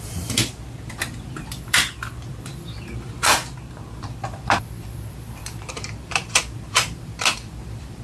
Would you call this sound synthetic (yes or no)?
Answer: yes